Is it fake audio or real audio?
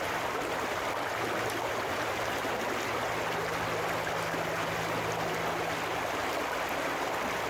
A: real